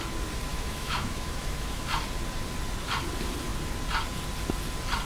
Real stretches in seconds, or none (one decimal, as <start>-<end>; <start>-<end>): 0.0-0.5; 1.8-5.0